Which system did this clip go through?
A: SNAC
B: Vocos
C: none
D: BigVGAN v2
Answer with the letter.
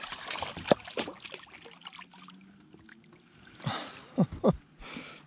C